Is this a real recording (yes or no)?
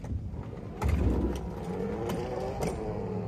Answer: yes